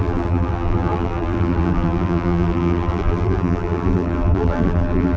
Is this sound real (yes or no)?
no